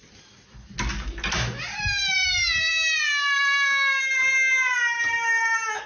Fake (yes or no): no